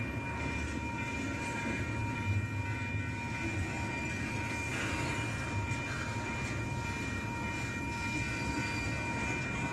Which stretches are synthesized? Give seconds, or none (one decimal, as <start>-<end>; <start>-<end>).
none